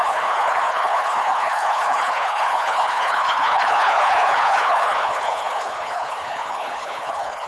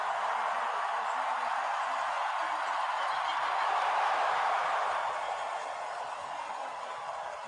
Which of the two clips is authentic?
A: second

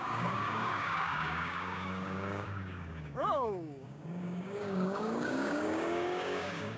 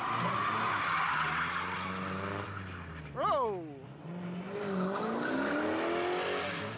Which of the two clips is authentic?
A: second